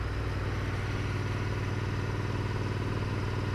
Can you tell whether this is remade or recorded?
recorded